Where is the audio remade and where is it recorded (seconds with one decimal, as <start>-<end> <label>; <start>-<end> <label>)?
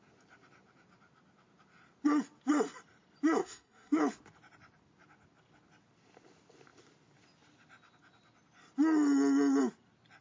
0.0-3.4 recorded; 3.4-4.0 remade; 4.0-10.2 recorded